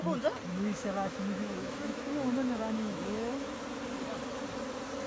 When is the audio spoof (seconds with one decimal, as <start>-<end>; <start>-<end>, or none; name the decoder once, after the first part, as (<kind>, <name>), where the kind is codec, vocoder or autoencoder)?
0.5-3.6 (autoencoder, DAC-VAE)